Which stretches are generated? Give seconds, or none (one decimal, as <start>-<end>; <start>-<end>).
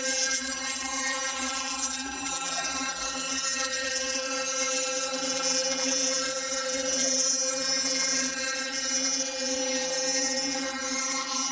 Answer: 0.0-11.5